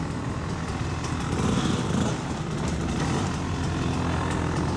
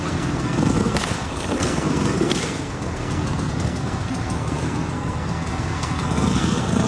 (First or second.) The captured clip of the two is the first